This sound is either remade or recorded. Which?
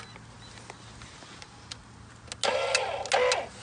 recorded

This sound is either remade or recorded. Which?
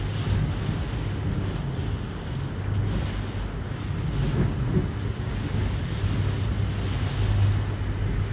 recorded